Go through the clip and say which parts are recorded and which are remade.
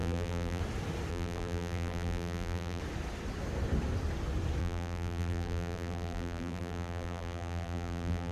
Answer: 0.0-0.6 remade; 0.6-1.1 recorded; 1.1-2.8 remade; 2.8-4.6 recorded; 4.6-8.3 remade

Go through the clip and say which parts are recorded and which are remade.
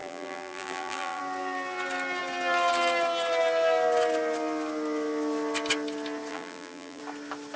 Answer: 0.0-1.2 remade; 1.2-6.3 recorded; 6.3-7.0 remade; 7.0-7.6 recorded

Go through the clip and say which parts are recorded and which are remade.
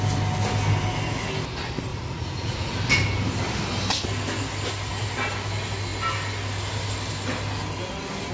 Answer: 0.0-1.9 recorded; 1.9-2.7 remade; 2.7-8.3 recorded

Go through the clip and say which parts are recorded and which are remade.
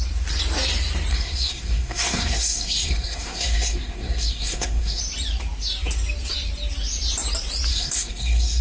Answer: 0.0-1.1 recorded; 1.1-5.0 remade; 5.0-7.7 recorded; 7.7-8.6 remade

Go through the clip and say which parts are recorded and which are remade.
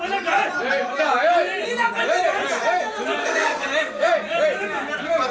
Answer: 0.0-3.2 recorded; 3.2-4.1 remade; 4.1-5.3 recorded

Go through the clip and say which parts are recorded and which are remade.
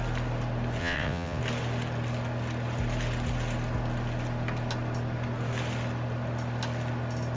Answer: 0.0-0.8 recorded; 0.8-1.4 remade; 1.4-7.4 recorded